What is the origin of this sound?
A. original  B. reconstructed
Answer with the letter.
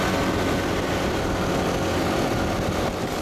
A